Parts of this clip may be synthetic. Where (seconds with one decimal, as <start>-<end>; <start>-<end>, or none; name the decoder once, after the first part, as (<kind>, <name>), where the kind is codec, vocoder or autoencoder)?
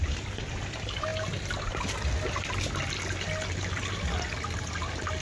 none